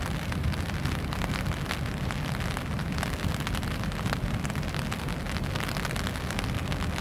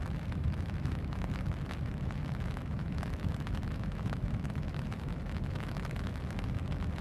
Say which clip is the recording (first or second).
first